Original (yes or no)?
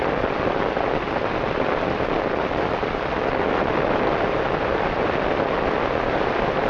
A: yes